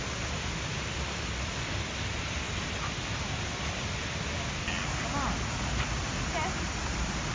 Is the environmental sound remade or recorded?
recorded